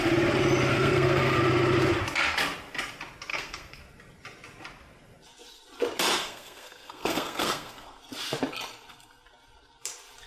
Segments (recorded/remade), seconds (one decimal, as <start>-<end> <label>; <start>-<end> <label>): 0.0-0.7 recorded; 0.7-1.4 remade; 1.4-3.3 recorded; 3.3-3.8 remade; 3.8-6.2 recorded; 6.2-8.0 remade; 8.0-10.3 recorded